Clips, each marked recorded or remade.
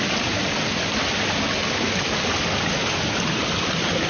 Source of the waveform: recorded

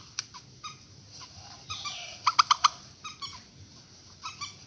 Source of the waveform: recorded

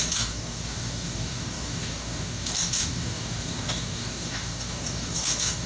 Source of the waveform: remade